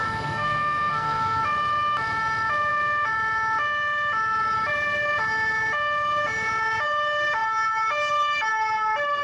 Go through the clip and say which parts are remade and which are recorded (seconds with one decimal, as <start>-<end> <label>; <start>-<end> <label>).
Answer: 0.0-1.4 remade; 1.4-9.2 recorded